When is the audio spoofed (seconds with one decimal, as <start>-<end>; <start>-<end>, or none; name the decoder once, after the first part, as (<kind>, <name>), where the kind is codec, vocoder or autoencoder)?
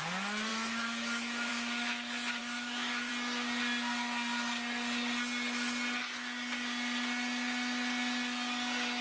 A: 0.5-1.5 (autoencoder, DAC-VAE); 2.4-3.1